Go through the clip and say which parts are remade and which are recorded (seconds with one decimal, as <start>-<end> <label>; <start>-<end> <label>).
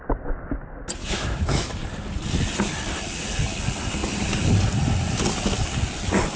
0.0-1.0 recorded; 1.0-1.8 remade; 1.8-6.4 recorded